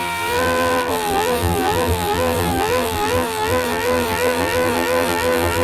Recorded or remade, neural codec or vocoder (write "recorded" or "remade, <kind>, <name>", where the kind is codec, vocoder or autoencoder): remade, vocoder, BigVGAN v2